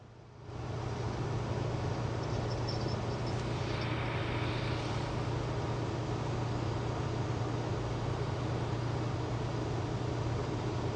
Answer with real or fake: real